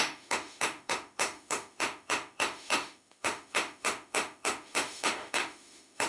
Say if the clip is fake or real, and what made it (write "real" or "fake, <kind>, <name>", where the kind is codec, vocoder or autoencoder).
fake, autoencoder, DAC-VAE